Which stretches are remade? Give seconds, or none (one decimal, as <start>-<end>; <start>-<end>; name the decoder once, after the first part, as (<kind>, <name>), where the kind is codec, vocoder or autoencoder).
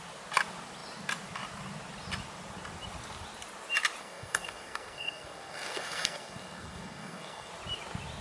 4.0-7.5 (codec, SNAC)